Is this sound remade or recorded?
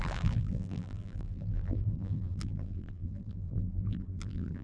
remade